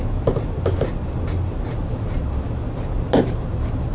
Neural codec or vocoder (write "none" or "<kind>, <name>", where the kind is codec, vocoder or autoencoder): none